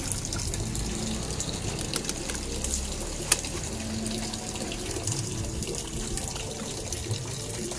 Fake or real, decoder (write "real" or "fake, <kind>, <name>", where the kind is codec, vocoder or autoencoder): real